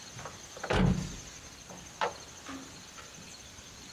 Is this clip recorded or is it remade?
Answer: recorded